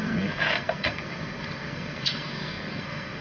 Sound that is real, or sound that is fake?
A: fake